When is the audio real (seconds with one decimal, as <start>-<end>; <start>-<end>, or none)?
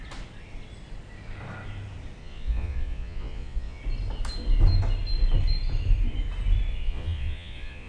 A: 0.0-2.2; 3.8-6.7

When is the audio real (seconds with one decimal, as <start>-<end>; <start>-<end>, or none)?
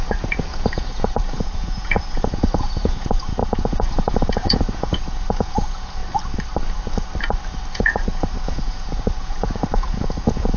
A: 6.0-7.7